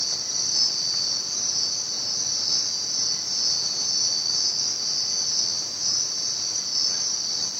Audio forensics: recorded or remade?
recorded